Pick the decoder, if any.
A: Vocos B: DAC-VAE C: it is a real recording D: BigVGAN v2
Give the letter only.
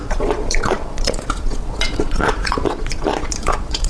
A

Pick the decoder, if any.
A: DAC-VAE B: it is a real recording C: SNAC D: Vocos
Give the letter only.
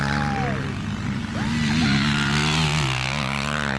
B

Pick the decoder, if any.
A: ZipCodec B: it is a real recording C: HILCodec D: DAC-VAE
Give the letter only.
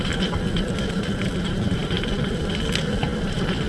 B